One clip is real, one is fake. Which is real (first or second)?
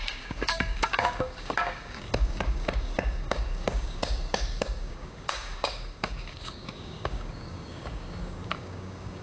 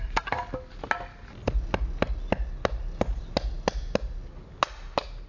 second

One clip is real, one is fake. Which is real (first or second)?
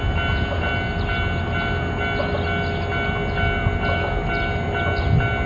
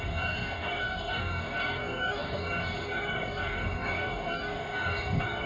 first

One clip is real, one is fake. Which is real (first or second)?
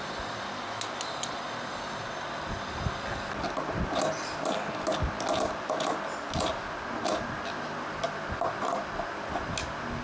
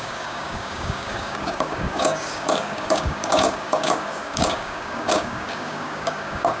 first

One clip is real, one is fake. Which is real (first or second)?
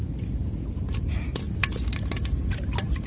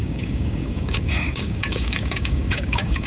first